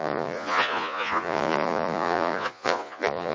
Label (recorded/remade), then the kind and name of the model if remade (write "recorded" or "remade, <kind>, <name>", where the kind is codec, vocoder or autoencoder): remade, vocoder, Vocos